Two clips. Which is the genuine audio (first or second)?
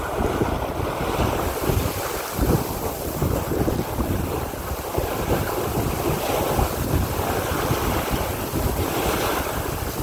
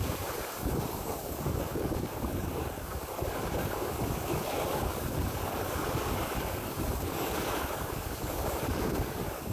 first